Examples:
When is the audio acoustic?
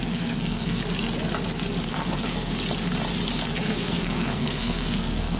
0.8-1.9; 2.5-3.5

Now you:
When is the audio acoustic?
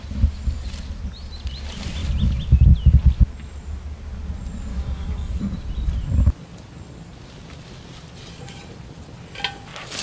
0.0-4.7; 5.4-10.0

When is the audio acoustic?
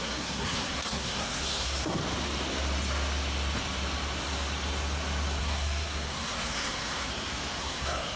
2.0-5.4; 7.1-7.6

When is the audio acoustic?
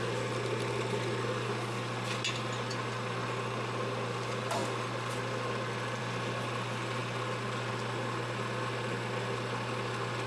0.0-10.3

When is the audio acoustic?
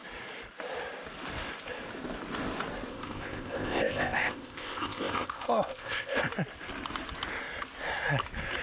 0.0-2.9; 6.3-8.6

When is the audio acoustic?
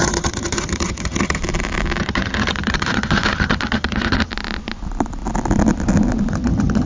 1.4-2.0; 4.3-6.3